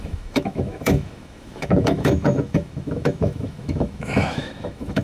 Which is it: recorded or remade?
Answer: remade